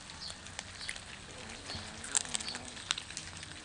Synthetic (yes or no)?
no